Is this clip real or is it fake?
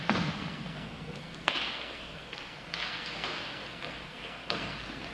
fake